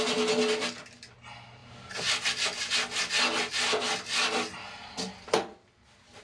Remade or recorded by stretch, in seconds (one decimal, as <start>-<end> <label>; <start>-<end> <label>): 0.0-6.2 recorded